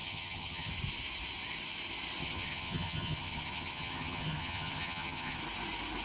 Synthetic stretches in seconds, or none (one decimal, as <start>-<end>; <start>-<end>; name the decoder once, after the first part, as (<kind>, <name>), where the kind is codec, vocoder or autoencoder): 0.0-0.7 (vocoder, HiFi-GAN); 2.2-5.4